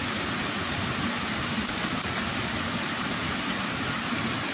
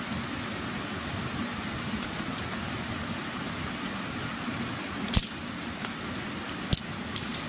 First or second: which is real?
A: second